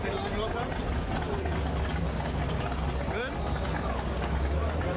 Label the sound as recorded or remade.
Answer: recorded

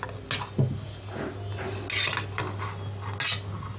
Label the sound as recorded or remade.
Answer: recorded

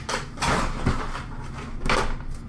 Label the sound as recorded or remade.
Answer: recorded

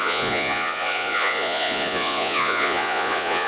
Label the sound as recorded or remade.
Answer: remade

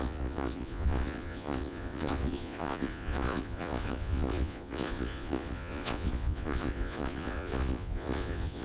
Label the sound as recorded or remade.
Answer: remade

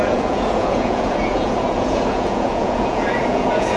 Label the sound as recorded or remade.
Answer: remade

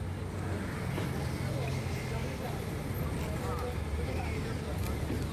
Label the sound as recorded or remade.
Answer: recorded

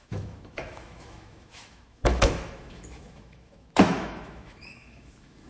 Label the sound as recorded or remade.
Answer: remade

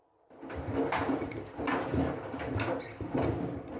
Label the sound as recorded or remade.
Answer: recorded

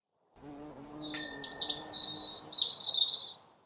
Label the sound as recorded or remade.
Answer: recorded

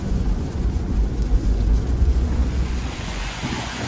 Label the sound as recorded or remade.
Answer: remade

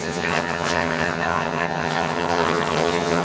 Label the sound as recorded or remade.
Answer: remade